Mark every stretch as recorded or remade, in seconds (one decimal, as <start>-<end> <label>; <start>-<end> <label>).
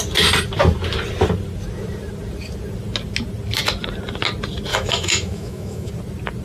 0.0-4.7 recorded; 4.7-5.9 remade; 5.9-6.4 recorded